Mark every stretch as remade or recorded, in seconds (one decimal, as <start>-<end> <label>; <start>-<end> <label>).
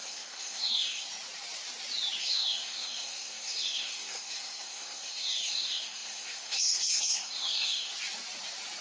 0.0-1.1 remade; 1.1-2.2 recorded; 2.2-7.9 remade; 7.9-8.8 recorded